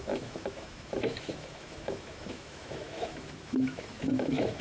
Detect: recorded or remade remade